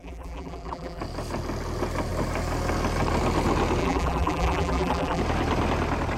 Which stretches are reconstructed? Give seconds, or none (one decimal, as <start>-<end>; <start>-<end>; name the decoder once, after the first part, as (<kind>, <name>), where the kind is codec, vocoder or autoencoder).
0.0-1.0 (vocoder, BigVGAN v2); 3.8-5.2